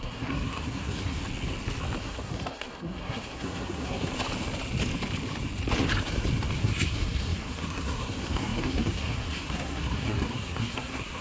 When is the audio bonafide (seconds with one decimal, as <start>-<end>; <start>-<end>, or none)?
1.2-2.0; 4.1-6.6